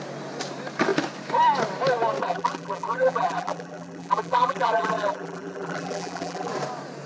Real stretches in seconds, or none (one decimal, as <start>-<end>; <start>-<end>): 0.0-2.2; 6.5-7.1